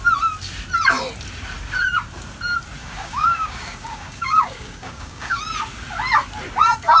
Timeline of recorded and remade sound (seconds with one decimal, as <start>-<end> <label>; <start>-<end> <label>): 0.0-2.8 recorded; 2.8-5.4 remade; 5.4-7.0 recorded